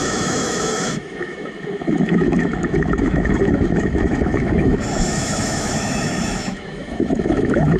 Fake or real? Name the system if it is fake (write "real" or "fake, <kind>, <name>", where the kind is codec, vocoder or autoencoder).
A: fake, autoencoder, DAC-VAE